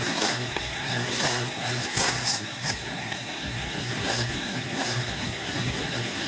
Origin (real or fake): fake